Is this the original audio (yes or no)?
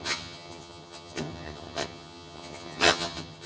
no